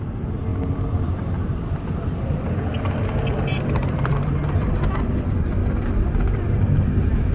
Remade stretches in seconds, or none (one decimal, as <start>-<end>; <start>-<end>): 0.5-4.9